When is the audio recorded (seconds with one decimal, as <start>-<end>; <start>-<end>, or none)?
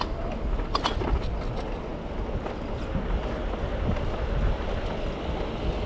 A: 0.0-5.9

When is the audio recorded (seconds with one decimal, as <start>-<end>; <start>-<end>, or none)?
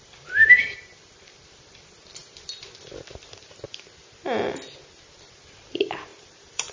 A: 2.2-5.3